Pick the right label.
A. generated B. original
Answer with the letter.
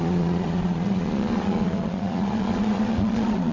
A